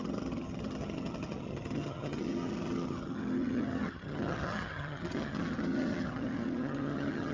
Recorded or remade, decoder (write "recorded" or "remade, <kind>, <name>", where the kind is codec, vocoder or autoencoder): remade, vocoder, HiFi-GAN